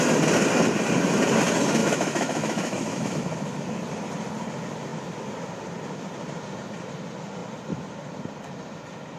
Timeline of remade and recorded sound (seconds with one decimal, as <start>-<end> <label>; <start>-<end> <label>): 0.0-1.8 recorded; 1.8-3.2 remade; 3.2-9.2 recorded

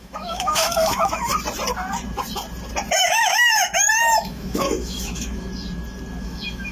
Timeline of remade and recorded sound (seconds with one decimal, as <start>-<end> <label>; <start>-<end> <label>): 0.0-1.3 remade; 1.3-3.0 recorded; 3.0-5.5 remade; 5.5-6.2 recorded; 6.2-6.7 remade

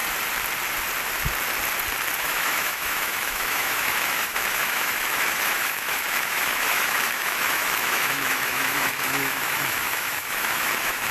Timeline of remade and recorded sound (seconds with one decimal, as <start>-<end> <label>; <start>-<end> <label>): 0.0-2.2 recorded; 2.2-11.1 remade

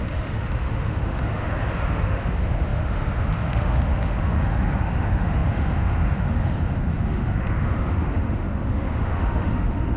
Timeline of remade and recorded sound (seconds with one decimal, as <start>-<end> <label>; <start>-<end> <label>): 0.0-10.0 remade

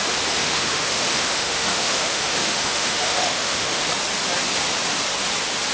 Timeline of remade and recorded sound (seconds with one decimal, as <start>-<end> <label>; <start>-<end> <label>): 0.0-0.4 recorded; 0.4-3.8 remade; 3.8-5.7 recorded